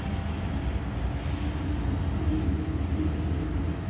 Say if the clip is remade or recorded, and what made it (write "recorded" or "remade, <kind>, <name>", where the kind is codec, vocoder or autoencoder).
recorded